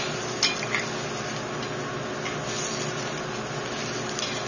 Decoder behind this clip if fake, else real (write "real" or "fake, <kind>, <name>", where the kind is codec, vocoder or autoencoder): real